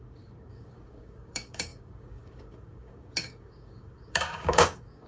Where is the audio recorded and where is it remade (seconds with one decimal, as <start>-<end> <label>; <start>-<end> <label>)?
0.0-5.1 remade